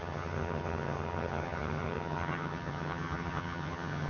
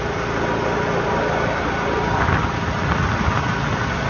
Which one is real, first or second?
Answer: second